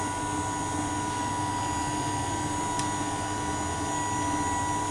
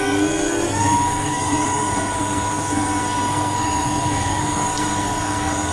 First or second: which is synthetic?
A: second